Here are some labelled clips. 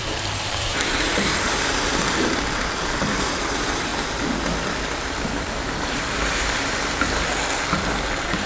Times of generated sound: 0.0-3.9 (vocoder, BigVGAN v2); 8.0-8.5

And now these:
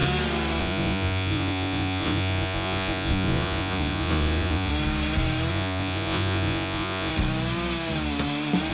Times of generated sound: 0.6-4.7 (vocoder, Vocos); 5.5-7.1

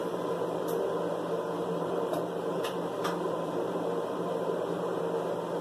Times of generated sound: 0.0-0.6 (vocoder, BigVGAN v2); 1.6-5.0

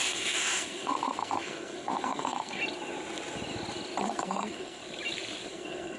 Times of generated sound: 0.0-2.6 (codec, SNAC); 4.0-4.8; 5.5-6.0

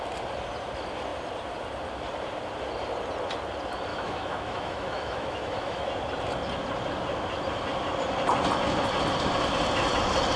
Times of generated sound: 3.9-5.9 (autoencoder, DAC-VAE)

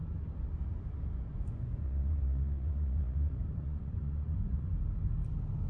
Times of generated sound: 1.3-4.7 (vocoder, Vocos)